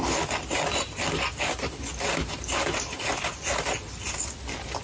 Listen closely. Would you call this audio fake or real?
real